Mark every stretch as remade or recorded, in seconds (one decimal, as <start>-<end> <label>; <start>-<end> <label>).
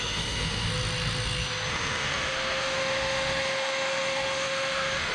0.0-0.7 remade; 0.7-1.7 recorded; 1.7-5.1 remade